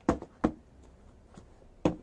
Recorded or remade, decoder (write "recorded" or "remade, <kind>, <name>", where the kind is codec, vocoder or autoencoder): recorded